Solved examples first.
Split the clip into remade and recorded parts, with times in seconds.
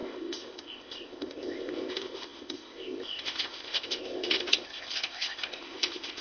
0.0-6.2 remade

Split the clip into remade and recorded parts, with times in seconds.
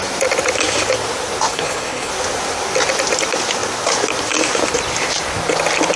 0.0-1.5 recorded; 1.5-2.1 remade; 2.1-6.0 recorded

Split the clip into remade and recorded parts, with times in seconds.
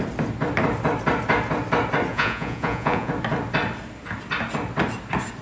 0.0-2.1 recorded; 2.1-3.1 remade; 3.1-5.4 recorded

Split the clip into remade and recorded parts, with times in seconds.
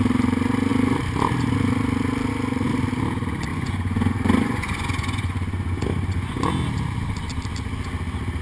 0.0-3.5 recorded; 3.5-6.5 remade; 6.5-8.4 recorded